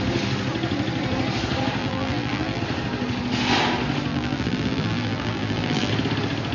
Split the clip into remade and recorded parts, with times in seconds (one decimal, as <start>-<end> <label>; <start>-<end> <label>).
0.0-1.8 recorded; 1.8-2.6 remade; 2.6-4.1 recorded; 4.1-5.9 remade; 5.9-6.5 recorded